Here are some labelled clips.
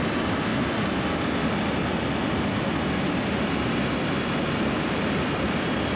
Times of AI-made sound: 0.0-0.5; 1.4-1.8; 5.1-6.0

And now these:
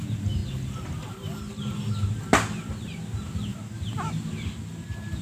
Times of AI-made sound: 3.5-4.1

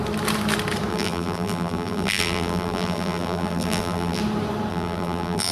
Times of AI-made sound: 0.9-4.2; 4.7-5.5